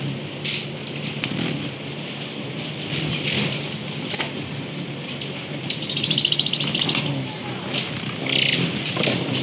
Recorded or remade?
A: recorded